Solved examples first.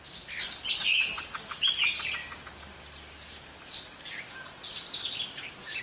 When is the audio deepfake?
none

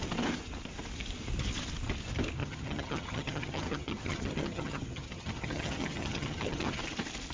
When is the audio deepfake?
2.4-6.8 (vocoder, HiFi-GAN)

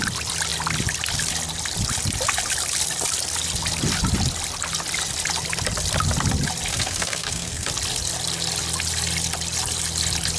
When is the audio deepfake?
6.7-7.7 (codec, SNAC)

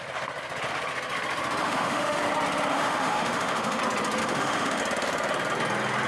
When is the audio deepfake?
1.6-2.3 (autoencoder, DAC-VAE); 2.7-3.8; 4.2-4.8

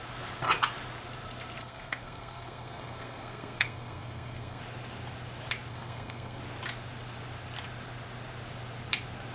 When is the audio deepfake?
1.6-4.6 (codec, SNAC); 5.7-6.4

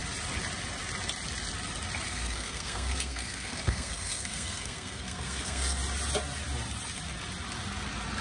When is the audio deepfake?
2.1-5.8 (codec, SNAC)

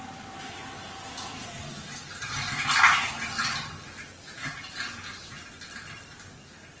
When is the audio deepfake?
none

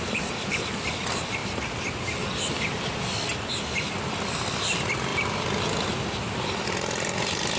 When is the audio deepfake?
none